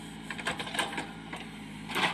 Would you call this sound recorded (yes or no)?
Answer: yes